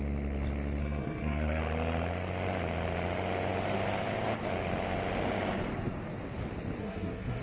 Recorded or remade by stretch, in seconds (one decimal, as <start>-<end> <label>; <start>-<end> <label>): 0.0-0.8 recorded; 0.8-1.6 remade; 1.6-6.8 recorded; 6.8-7.4 remade